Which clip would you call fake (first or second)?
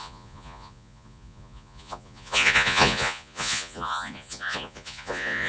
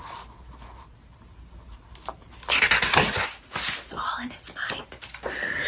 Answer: first